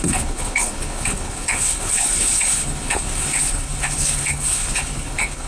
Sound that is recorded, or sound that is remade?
remade